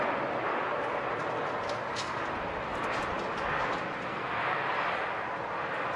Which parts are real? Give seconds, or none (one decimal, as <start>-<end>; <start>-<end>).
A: 0.0-4.1; 4.6-6.0